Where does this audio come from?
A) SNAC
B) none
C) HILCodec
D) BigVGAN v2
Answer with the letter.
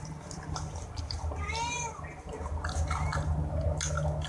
B